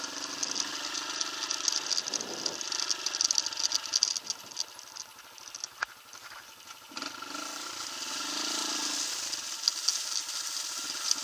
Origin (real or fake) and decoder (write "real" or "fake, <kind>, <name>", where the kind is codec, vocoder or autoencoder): real